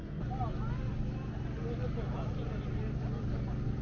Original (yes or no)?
yes